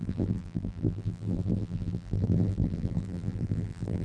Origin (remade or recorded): remade